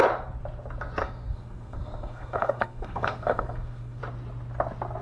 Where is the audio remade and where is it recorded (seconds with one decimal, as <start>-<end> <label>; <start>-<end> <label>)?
0.0-1.0 recorded; 1.0-4.0 remade; 4.0-5.0 recorded